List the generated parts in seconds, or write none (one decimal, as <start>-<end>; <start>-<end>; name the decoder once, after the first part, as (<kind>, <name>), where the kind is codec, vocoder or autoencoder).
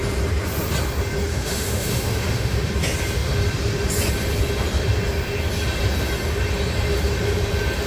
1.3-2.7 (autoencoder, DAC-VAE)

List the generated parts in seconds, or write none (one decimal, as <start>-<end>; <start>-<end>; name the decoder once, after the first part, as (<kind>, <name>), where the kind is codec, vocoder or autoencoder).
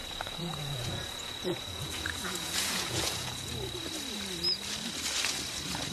0.0-3.5 (vocoder, Vocos)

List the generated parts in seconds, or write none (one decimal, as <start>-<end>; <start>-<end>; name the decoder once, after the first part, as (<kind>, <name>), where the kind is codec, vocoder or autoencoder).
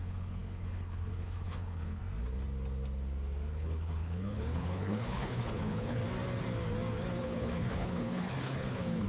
0.0-2.0 (codec, HILCodec); 3.5-6.0; 7.2-9.1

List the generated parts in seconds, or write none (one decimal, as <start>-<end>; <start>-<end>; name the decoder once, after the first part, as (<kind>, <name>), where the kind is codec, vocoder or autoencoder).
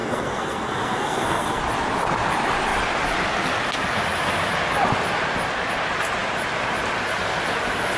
0.0-1.6 (codec, SNAC)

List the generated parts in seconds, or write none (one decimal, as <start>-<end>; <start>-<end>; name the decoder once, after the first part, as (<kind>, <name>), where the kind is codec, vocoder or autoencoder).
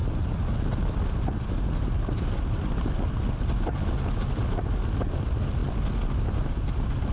none